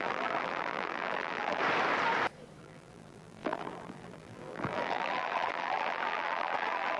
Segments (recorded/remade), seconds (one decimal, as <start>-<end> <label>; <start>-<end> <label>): 0.0-1.6 remade; 1.6-2.6 recorded; 2.6-7.0 remade